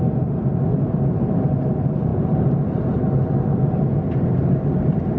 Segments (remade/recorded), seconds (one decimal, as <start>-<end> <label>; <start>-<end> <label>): 0.0-5.2 recorded